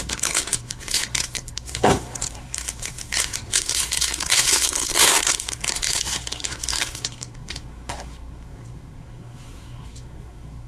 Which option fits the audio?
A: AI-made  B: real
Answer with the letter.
A